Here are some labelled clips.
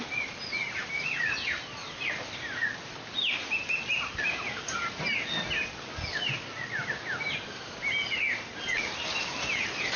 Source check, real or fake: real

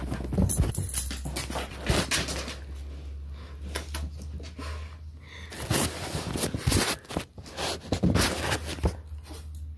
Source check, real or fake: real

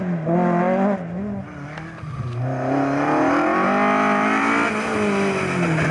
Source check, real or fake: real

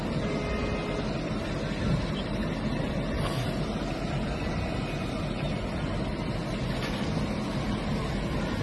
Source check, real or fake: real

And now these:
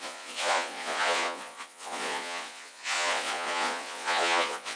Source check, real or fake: fake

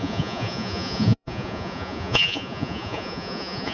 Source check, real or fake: fake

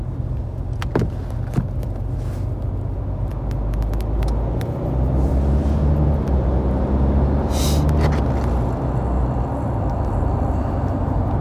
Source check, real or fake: real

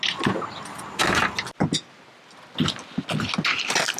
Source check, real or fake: real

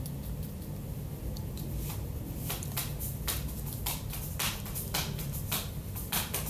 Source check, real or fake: fake